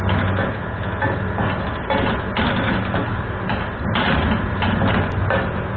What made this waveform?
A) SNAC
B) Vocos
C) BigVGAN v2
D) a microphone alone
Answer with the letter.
D